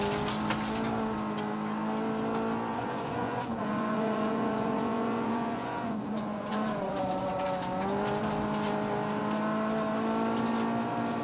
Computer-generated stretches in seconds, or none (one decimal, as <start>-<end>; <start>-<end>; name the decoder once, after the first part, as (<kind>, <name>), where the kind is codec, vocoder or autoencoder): 2.7-6.9 (vocoder, Vocos)